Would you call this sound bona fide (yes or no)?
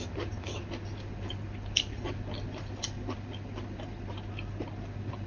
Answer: yes